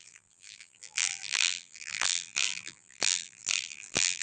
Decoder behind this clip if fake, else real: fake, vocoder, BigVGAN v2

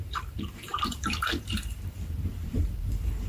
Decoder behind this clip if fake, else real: fake, vocoder, BigVGAN v2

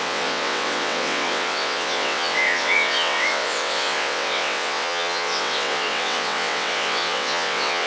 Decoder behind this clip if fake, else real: fake, vocoder, WaveNeXt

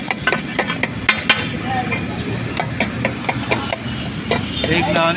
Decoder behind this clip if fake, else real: real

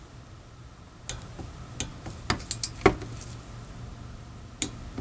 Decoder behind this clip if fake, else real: real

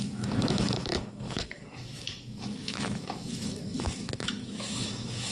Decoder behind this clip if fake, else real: fake, autoencoder, DAC-VAE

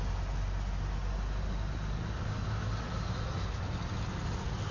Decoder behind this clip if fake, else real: real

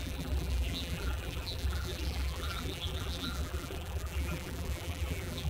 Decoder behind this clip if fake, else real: fake, vocoder, BigVGAN v2